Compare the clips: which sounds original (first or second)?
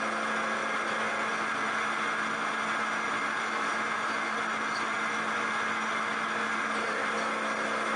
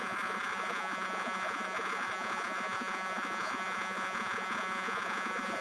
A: first